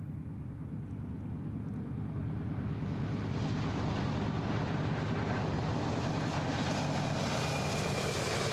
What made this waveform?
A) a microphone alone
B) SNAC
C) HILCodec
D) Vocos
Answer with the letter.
A